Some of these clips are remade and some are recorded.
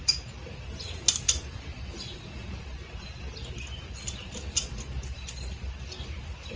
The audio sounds recorded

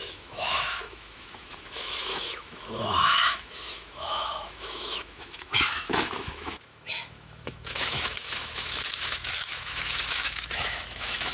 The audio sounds remade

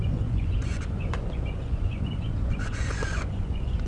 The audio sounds remade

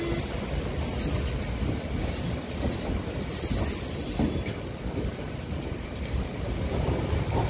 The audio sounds recorded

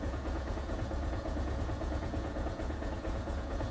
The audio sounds remade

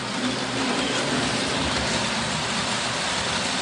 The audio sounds recorded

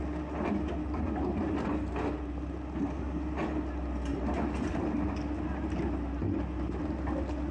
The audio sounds recorded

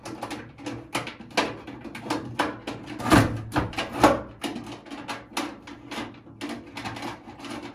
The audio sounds recorded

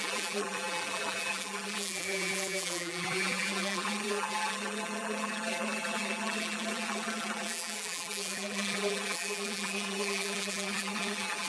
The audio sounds remade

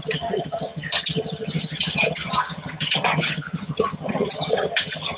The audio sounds remade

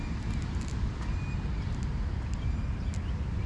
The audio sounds recorded